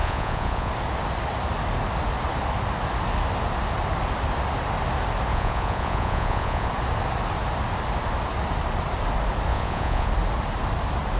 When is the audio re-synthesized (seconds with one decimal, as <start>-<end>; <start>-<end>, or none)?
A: 0.0-0.7; 5.3-6.7; 9.5-10.1

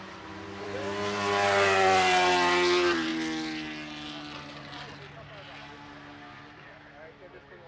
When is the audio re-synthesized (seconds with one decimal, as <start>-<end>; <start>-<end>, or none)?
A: none

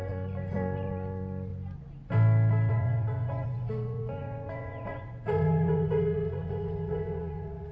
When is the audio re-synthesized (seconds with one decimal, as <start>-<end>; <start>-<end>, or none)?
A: 0.0-1.5; 2.7-7.7